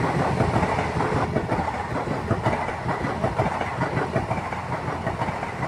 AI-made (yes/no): no